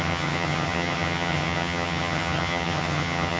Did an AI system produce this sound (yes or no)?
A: yes